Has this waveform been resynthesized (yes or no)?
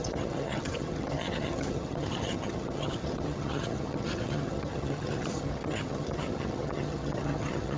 yes